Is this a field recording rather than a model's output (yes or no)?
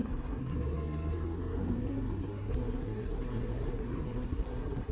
no